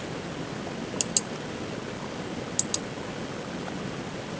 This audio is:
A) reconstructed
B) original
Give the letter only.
B